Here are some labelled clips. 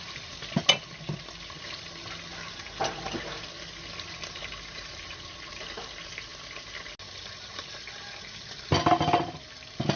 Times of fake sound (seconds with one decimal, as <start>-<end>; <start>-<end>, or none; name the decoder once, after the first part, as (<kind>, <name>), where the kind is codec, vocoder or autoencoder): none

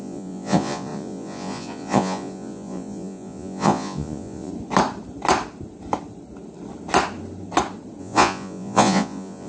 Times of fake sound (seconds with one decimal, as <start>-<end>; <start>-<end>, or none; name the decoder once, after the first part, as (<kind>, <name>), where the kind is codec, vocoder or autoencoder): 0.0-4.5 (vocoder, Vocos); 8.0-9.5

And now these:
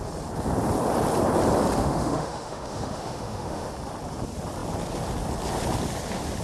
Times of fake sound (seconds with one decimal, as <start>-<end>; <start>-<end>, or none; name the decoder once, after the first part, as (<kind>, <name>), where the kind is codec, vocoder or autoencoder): 1.8-3.7 (autoencoder, DAC-VAE)

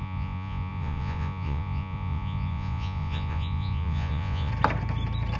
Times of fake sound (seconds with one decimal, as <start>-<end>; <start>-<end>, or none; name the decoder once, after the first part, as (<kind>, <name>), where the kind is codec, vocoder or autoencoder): 0.0-4.5 (vocoder, Vocos)

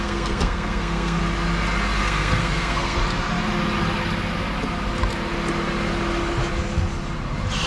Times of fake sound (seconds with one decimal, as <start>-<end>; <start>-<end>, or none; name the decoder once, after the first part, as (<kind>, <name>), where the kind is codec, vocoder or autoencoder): 0.0-1.2 (codec, SNAC); 2.0-3.0

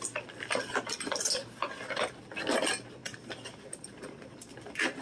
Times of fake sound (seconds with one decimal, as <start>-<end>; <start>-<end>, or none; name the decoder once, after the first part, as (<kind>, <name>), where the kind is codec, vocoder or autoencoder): 3.0-4.5 (vocoder, BigVGAN v2)

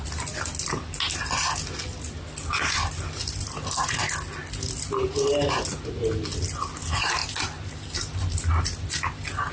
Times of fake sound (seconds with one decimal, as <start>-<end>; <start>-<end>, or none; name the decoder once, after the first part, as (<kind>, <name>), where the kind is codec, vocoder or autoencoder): none

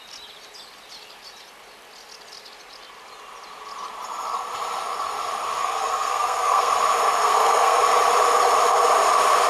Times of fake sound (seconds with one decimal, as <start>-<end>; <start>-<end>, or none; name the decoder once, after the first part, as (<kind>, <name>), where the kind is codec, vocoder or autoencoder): 5.6-6.7 (codec, SNAC); 7.2-7.8